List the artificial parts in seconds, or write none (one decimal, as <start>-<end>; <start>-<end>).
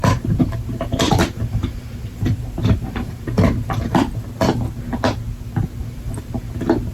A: 0.0-4.1; 5.8-6.4